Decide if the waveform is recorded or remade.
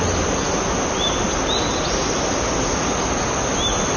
recorded